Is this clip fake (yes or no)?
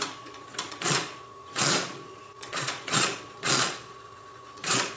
yes